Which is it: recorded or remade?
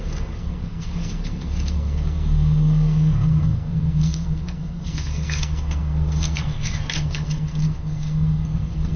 remade